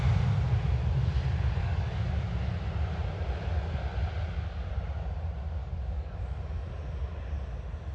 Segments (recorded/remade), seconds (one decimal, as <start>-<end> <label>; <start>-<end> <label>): 0.0-1.6 recorded; 1.6-2.2 remade; 2.2-5.6 recorded; 5.6-6.2 remade; 6.2-7.9 recorded